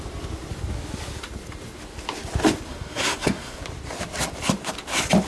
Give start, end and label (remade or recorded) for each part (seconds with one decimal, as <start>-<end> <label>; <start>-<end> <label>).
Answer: 0.0-2.7 recorded; 2.7-3.6 remade; 3.6-5.3 recorded